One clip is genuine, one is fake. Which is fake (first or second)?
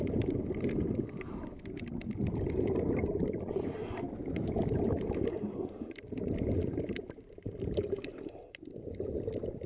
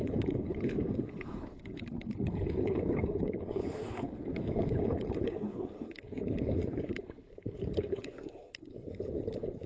second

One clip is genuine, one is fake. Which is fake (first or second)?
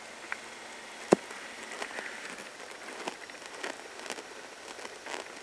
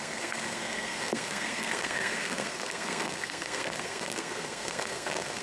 second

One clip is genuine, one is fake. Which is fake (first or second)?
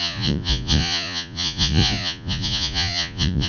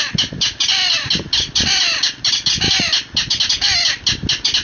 first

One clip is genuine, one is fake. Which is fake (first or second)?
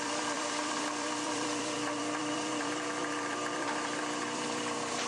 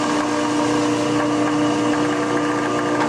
first